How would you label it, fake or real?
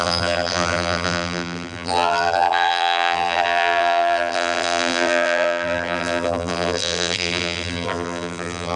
fake